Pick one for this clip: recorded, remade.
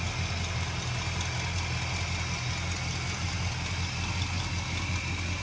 recorded